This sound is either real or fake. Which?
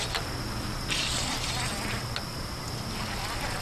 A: real